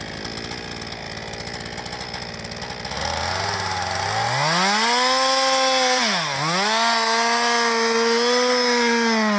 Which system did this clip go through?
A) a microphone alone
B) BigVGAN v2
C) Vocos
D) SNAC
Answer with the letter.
A